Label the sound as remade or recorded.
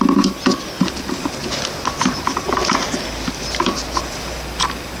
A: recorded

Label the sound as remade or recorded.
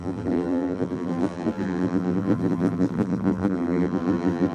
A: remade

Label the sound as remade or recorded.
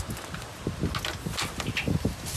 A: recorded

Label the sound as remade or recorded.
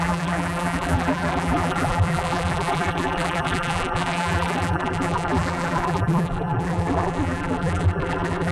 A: remade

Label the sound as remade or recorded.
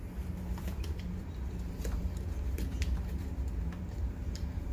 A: remade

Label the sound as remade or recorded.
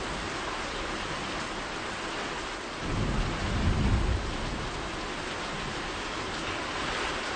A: recorded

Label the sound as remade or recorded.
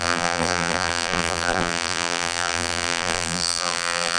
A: remade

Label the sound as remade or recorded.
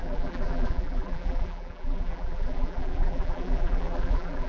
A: remade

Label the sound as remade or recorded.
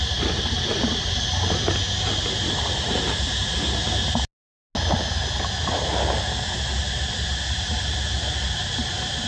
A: recorded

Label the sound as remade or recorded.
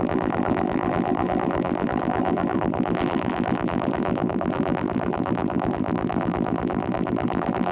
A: remade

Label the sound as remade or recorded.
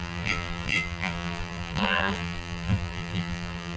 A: remade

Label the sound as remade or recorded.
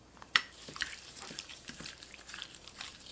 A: remade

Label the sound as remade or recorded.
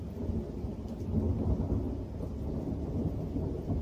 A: recorded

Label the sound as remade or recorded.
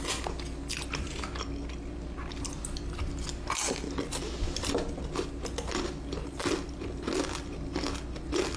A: recorded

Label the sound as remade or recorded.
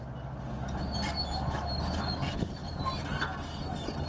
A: recorded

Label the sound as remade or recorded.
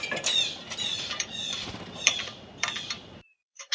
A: remade